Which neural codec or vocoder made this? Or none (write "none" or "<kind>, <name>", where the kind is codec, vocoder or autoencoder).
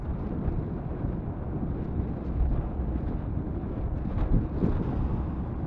none